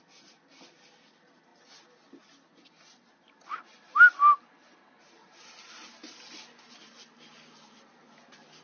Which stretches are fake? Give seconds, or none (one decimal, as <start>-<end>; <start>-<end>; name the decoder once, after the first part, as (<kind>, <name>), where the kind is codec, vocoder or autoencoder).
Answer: none